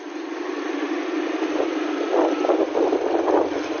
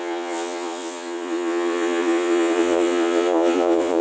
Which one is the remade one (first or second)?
second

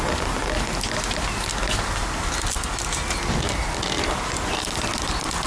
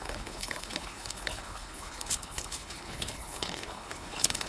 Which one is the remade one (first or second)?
second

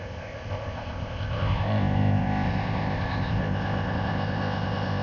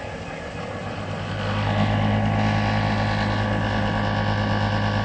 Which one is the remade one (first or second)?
first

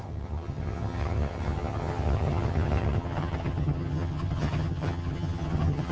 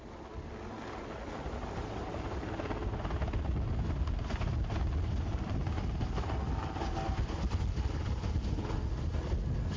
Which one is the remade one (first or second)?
first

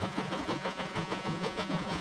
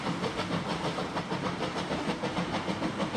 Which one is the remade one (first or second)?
first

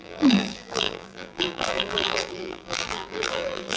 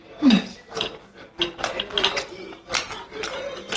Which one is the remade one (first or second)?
first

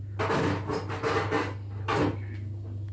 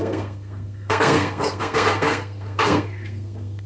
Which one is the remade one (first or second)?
second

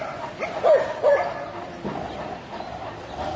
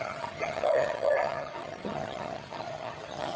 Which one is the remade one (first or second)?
second